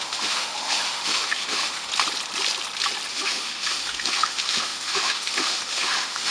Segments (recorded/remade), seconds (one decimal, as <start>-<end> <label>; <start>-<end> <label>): 0.0-1.9 remade; 1.9-3.1 recorded; 3.1-6.3 remade